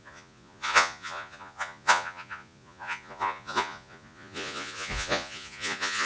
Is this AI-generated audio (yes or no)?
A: yes